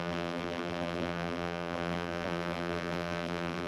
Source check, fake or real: fake